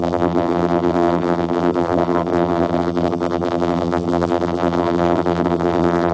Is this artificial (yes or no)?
yes